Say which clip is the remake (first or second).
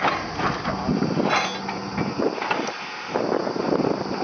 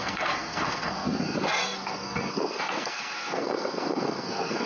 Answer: second